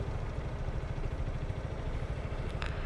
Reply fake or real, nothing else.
real